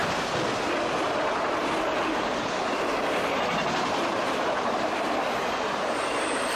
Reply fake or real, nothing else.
fake